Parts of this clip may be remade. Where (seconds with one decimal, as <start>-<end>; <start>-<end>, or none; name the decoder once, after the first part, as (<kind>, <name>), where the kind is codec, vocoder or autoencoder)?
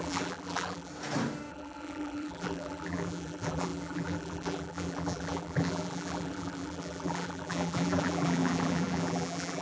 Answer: 0.0-0.9 (vocoder, BigVGAN v2); 1.5-9.6